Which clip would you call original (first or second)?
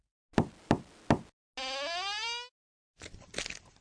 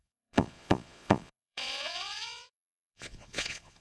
first